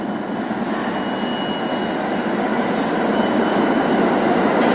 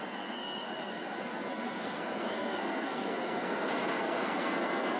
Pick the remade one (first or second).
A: second